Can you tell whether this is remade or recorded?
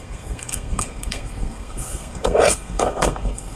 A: remade